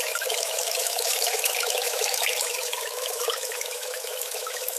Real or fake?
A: fake